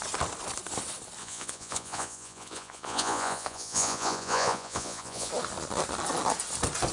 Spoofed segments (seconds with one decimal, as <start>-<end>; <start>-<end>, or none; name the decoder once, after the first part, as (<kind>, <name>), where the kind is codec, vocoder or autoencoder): 1.2-5.3 (vocoder, Vocos)